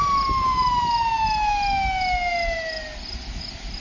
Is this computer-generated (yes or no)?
no